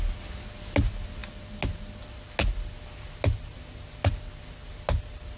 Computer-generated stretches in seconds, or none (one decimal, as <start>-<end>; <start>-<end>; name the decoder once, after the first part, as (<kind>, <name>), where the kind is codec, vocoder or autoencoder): none